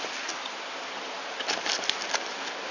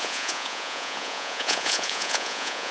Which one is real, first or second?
first